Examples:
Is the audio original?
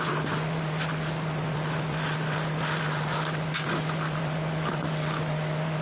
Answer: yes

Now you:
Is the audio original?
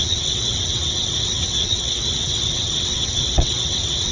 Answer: no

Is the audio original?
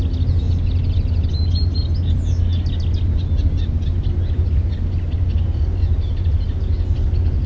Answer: yes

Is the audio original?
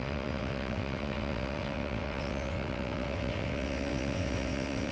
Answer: no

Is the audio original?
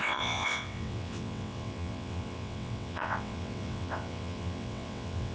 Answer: no